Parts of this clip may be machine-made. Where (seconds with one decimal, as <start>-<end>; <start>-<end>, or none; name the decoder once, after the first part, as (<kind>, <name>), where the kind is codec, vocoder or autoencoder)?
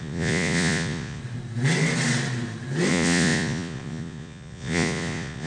0.0-1.2 (vocoder, Vocos); 2.9-5.5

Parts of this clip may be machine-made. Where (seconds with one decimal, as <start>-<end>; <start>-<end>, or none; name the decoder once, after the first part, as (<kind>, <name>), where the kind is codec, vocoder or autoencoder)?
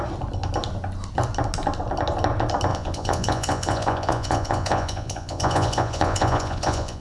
2.7-7.0 (vocoder, Vocos)